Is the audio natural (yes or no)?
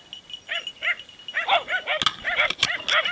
yes